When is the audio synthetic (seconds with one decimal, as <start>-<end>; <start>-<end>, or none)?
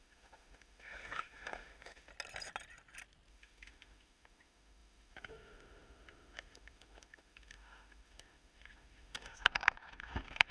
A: 0.0-2.1; 3.3-10.5